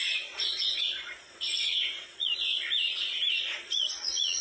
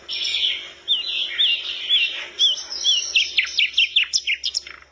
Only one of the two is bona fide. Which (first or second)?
second